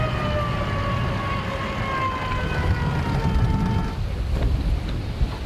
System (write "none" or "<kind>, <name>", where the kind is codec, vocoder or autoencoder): none